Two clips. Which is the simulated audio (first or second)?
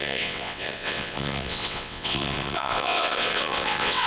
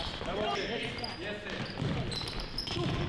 first